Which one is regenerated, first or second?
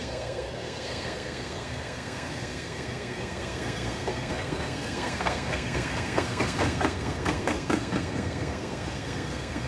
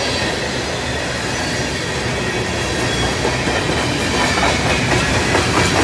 first